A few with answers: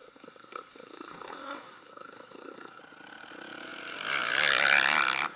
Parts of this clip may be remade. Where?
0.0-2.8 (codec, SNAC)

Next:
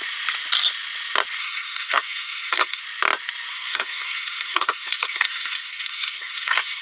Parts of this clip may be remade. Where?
1.4-2.8 (codec, SNAC); 3.5-6.8

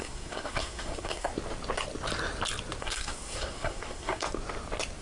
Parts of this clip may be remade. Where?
0.0-1.3 (codec, SNAC); 2.8-4.2

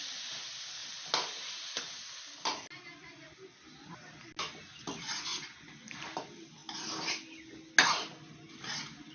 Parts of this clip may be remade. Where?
none

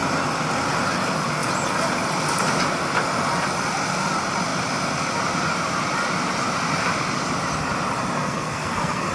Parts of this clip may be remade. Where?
8.2-9.1 (codec, SNAC)

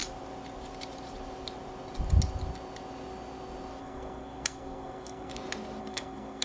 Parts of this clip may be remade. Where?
3.8-5.3 (codec, SNAC); 5.8-6.4

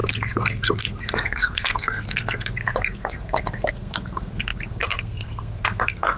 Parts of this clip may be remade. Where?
0.0-6.2 (codec, SNAC)